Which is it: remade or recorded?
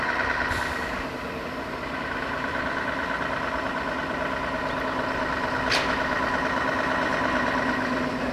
recorded